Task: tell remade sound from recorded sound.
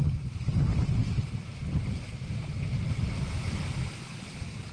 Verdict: recorded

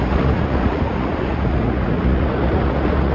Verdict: remade